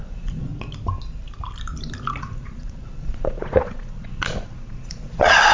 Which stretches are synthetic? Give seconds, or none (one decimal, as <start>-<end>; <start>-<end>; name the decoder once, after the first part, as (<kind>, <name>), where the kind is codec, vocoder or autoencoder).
0.0-0.5 (vocoder, Vocos); 2.2-5.5